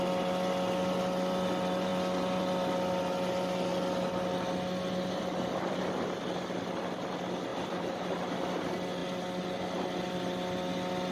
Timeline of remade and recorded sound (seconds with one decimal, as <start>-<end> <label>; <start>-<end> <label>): 0.0-7.5 recorded; 7.5-8.2 remade; 8.2-11.1 recorded